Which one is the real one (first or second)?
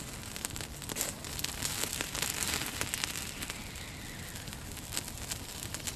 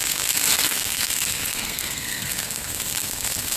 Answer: first